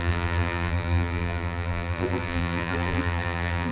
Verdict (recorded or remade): remade